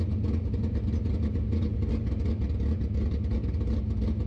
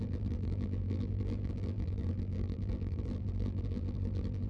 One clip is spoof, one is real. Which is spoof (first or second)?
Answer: second